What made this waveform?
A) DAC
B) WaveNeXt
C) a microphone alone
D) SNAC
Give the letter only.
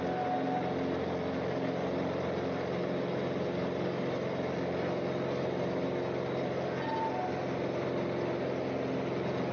C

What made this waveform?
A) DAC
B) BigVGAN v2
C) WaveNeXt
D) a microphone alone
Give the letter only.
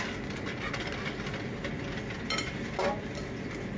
D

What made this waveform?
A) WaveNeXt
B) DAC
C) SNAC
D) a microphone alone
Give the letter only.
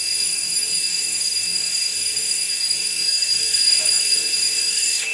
B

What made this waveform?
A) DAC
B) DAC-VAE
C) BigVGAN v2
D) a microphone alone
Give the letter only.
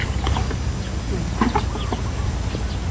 D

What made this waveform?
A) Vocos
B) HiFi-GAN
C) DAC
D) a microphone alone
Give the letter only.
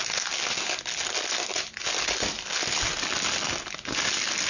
D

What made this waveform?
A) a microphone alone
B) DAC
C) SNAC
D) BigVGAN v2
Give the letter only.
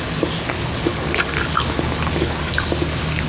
B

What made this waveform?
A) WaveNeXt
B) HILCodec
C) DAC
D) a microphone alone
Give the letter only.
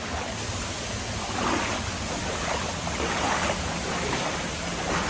D